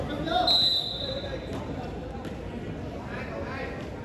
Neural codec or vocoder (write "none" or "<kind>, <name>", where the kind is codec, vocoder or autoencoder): none